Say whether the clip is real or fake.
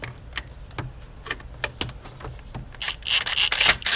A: real